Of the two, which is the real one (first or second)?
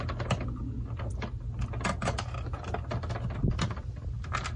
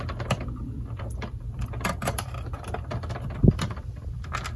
first